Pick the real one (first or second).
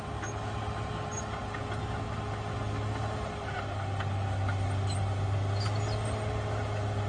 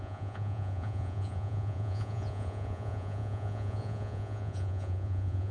first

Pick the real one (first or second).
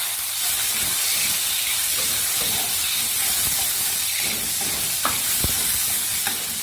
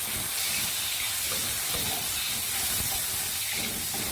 second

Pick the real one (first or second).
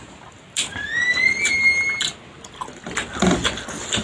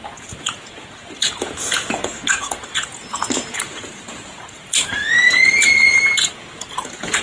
first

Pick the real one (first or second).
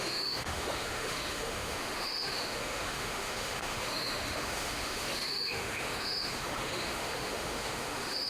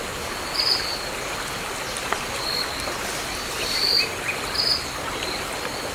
second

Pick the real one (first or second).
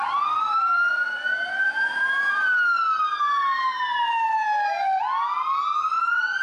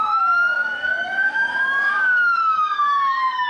first